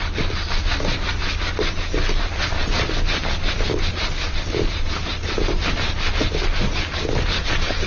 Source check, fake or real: real